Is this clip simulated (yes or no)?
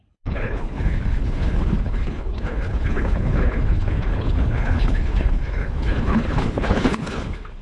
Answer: yes